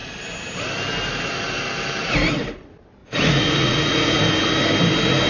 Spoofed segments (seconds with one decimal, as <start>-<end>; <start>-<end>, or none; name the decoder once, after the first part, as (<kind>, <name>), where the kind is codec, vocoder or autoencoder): 3.0-4.2 (vocoder, Vocos)